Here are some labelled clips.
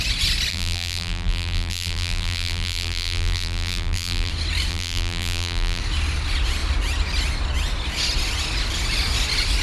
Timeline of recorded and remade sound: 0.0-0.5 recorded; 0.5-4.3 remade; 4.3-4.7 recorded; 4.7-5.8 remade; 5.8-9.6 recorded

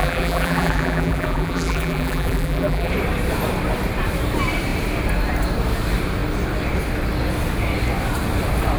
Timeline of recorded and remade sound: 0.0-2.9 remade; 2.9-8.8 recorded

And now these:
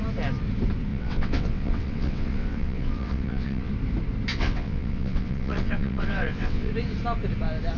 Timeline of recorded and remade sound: 0.0-0.9 recorded; 0.9-3.7 remade; 3.7-4.3 recorded; 4.3-6.7 remade; 6.7-7.8 recorded

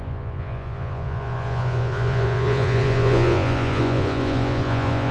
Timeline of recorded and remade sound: 0.0-5.1 remade

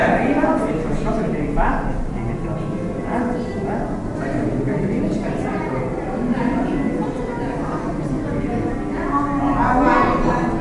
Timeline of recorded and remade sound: 0.0-10.6 recorded

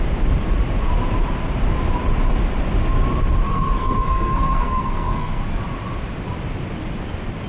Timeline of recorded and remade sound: 0.0-3.4 recorded; 3.4-5.6 remade; 5.6-7.5 recorded